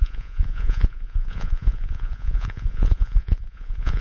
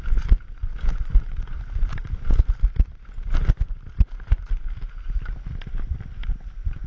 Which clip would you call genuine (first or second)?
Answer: second